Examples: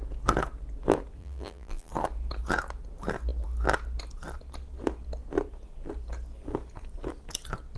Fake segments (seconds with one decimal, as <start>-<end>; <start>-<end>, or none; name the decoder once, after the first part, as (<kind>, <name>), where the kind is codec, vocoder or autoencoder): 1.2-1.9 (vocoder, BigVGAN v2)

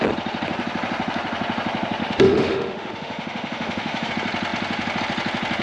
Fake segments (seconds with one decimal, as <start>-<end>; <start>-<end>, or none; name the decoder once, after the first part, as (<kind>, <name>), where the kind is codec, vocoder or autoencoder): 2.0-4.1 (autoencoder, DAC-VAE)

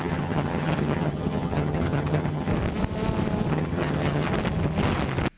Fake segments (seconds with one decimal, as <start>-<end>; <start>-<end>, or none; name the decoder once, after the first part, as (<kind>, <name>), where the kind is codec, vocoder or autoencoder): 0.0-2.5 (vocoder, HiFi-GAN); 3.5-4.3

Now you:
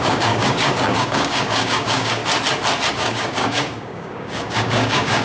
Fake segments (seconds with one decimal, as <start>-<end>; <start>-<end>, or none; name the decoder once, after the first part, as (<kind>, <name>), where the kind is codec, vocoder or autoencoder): 0.0-2.2 (codec, DAC); 2.9-5.2